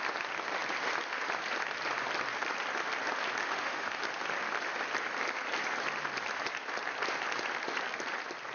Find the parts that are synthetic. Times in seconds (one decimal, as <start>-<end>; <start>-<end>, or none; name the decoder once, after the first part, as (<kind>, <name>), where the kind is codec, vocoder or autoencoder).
3.4-4.0 (autoencoder, DAC-VAE)